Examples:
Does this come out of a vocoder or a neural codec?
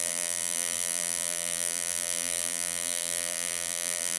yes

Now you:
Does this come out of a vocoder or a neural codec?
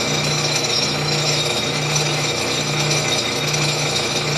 yes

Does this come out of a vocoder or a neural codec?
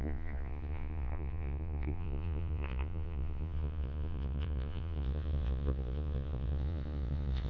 yes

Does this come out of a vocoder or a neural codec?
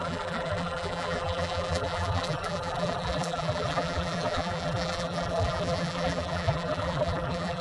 yes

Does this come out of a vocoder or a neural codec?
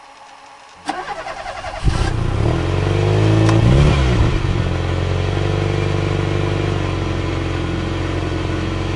no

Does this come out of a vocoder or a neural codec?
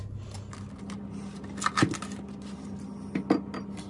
no